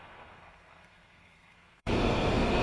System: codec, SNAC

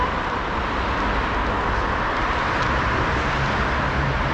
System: none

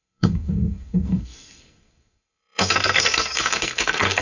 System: codec, SNAC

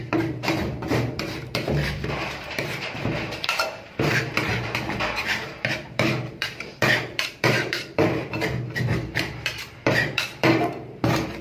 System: vocoder, BigVGAN v2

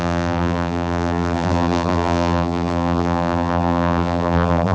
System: vocoder, BigVGAN v2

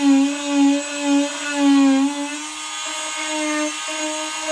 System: none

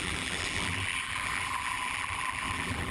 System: vocoder, BigVGAN v2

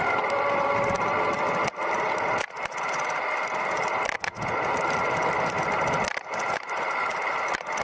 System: none